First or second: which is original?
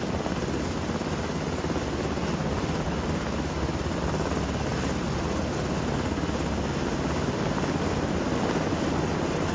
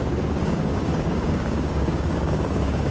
first